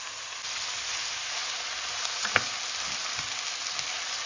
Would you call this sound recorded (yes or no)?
yes